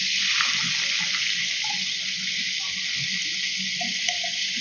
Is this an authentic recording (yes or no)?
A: yes